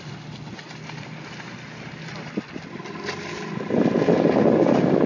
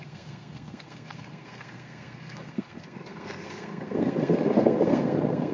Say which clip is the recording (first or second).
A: first